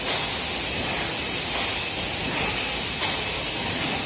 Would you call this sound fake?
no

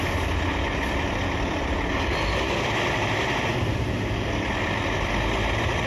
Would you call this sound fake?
no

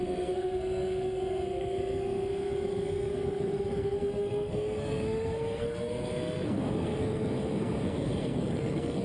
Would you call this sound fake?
yes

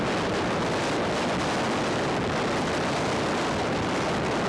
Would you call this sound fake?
no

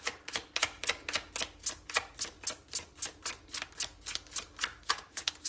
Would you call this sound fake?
no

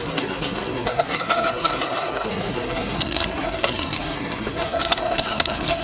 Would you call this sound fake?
yes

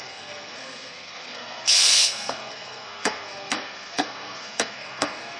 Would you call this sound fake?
yes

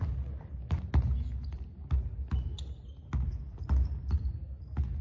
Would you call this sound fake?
no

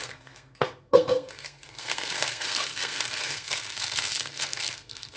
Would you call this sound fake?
yes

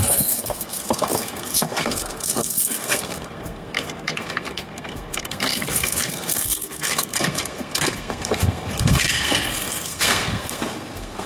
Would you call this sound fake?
yes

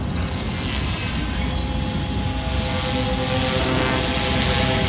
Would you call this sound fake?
no